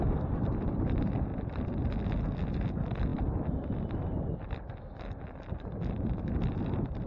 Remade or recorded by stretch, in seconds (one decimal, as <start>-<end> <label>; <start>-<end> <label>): 0.0-1.3 remade; 1.3-2.5 recorded; 2.5-7.1 remade